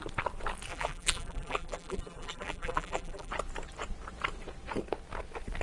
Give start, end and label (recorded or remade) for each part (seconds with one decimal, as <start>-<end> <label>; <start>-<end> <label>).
0.0-0.7 recorded; 0.7-3.3 remade; 3.3-5.6 recorded